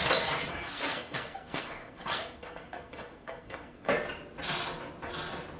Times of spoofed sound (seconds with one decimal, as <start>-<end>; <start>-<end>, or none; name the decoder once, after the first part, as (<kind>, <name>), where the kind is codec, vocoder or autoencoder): 0.5-3.9 (codec, SNAC)